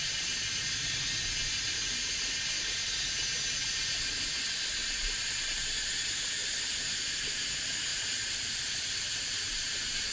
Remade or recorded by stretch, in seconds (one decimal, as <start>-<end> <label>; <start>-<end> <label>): 0.0-4.8 recorded; 4.8-5.6 remade; 5.6-6.4 recorded; 6.4-7.2 remade; 7.2-7.9 recorded; 7.9-9.7 remade; 9.7-10.1 recorded